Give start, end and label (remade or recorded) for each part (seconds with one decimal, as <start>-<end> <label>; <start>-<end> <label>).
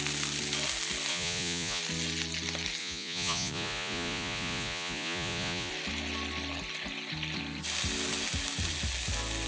0.0-1.1 recorded; 1.1-1.8 remade; 1.8-2.8 recorded; 2.8-5.7 remade; 5.7-9.5 recorded